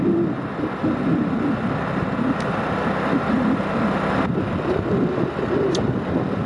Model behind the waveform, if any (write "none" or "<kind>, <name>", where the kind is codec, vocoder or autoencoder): none